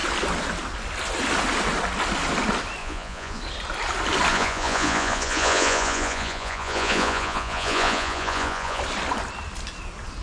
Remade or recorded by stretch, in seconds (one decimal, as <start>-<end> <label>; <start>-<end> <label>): 0.0-2.8 recorded; 2.8-3.4 remade; 3.4-4.3 recorded; 4.3-8.8 remade; 8.8-10.2 recorded